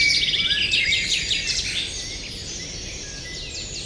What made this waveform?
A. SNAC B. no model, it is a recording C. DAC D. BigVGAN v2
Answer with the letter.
B